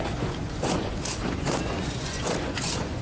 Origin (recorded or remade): remade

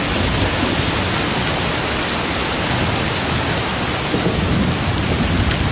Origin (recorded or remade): recorded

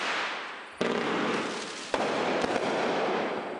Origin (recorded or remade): recorded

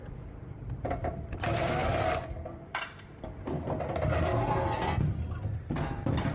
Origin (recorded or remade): recorded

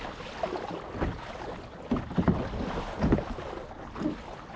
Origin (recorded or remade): recorded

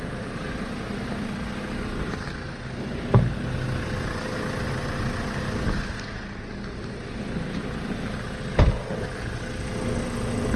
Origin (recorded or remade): recorded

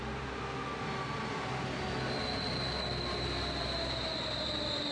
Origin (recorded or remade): recorded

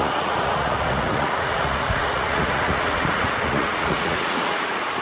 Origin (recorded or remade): remade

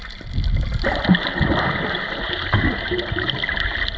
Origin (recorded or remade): recorded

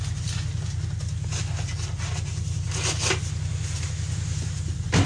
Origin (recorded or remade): recorded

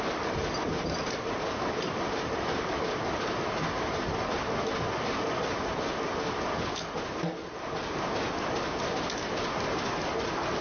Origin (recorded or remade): recorded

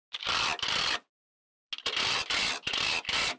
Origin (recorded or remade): recorded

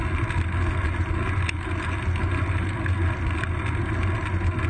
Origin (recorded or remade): recorded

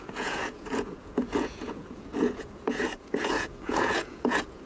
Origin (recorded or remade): remade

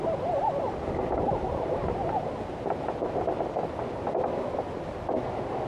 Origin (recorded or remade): recorded